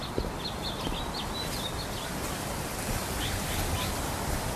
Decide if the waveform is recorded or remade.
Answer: recorded